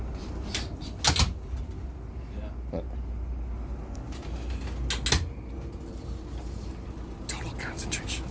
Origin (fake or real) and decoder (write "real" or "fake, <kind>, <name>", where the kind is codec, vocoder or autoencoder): real